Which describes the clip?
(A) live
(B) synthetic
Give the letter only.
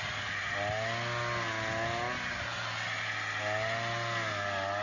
A